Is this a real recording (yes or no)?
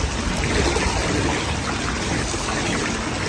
yes